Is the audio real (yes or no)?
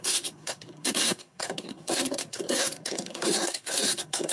no